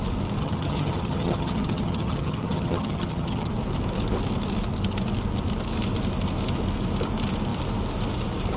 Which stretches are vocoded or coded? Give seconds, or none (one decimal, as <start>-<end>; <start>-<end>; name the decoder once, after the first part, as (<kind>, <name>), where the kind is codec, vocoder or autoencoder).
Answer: 0.4-3.5 (vocoder, HiFi-GAN)